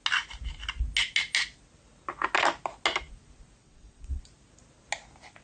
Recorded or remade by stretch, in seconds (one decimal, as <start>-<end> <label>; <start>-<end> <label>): 0.0-3.6 recorded; 3.6-4.2 remade; 4.2-5.4 recorded